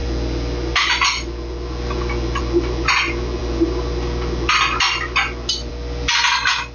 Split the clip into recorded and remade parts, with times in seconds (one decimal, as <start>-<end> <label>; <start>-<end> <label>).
0.0-6.7 recorded